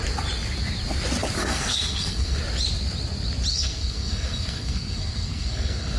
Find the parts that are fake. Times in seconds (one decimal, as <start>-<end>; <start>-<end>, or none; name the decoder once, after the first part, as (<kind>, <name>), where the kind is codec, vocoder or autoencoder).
1.4-2.4 (codec, SNAC); 3.5-6.0